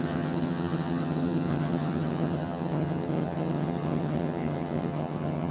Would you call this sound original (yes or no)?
no